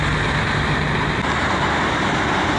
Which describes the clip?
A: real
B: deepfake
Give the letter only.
A